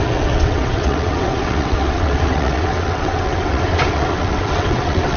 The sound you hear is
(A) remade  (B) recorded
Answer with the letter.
A